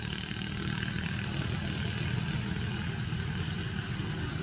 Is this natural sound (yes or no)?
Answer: yes